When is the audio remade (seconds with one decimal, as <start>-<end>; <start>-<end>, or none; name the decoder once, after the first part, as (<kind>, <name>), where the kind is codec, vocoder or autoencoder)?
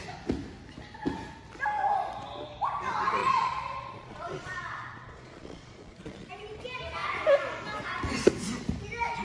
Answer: 3.2-6.3 (vocoder, Vocos)